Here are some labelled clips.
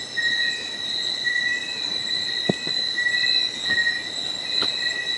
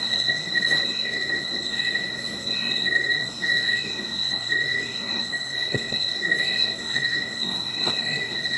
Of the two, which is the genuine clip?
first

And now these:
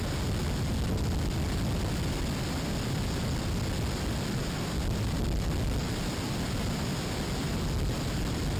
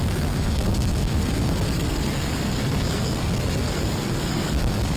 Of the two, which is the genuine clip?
first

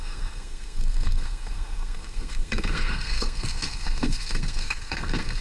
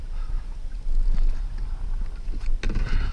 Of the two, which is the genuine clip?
second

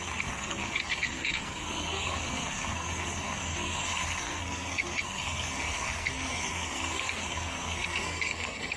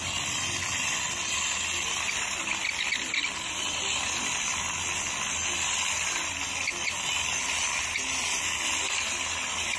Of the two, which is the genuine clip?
second